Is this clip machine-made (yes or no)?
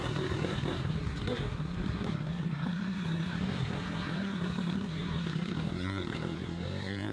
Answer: yes